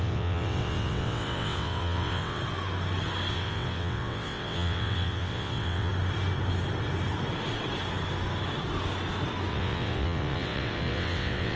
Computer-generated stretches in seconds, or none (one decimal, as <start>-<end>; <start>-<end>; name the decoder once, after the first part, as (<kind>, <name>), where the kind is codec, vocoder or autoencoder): 0.0-2.4 (vocoder, WaveNeXt); 3.3-5.9; 9.5-11.6